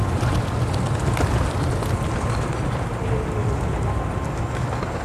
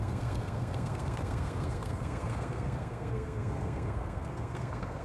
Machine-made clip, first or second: second